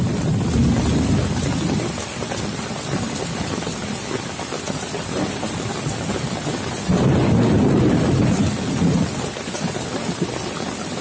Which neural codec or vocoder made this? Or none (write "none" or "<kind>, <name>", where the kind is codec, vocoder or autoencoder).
none